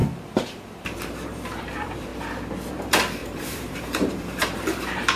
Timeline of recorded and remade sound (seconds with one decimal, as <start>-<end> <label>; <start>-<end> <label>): 0.0-2.1 remade; 2.1-2.7 recorded; 2.7-5.2 remade